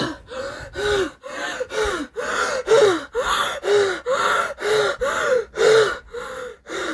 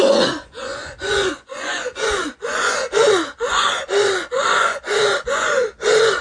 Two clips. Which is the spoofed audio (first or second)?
second